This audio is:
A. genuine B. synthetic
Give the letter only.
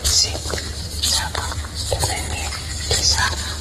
A